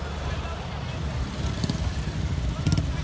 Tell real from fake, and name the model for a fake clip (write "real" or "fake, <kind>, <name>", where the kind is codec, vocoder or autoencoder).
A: real